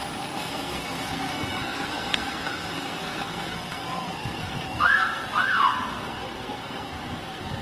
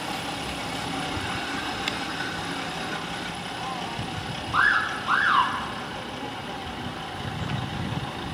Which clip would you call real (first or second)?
second